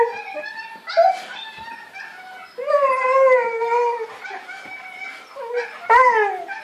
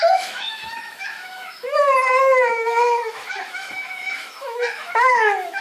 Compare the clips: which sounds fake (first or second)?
second